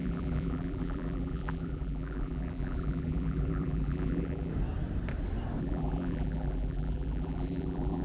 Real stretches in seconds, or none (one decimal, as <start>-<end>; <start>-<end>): 4.5-5.6